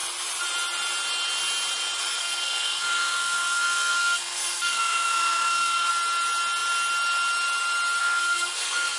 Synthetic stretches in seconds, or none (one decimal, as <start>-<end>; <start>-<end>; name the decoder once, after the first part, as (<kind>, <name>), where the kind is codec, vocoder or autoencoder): 2.2-5.9 (codec, SNAC); 8.0-9.0